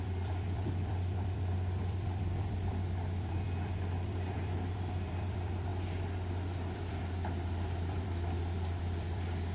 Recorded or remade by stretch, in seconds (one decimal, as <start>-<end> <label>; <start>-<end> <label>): 0.0-5.7 remade; 5.7-6.3 recorded; 6.3-9.5 remade